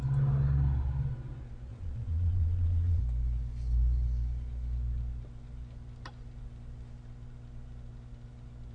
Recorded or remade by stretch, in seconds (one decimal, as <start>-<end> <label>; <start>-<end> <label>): 0.0-1.7 recorded; 1.7-3.0 remade; 3.0-8.7 recorded